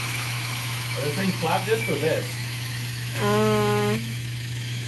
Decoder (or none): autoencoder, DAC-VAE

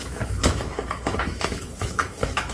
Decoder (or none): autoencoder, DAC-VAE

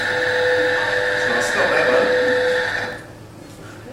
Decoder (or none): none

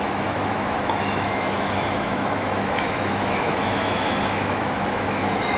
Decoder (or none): autoencoder, DAC-VAE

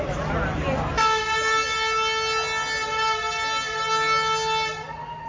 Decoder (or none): none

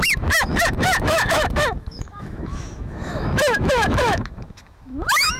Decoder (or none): autoencoder, DAC-VAE